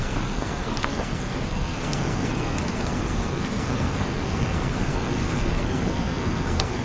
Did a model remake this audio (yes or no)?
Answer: yes